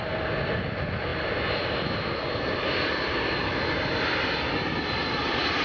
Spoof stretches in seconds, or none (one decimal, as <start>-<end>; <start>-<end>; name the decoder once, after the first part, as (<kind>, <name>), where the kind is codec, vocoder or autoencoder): none